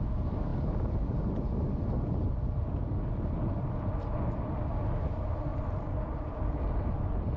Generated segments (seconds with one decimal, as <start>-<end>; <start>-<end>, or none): 5.5-7.0